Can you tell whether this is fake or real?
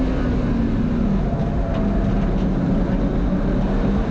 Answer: real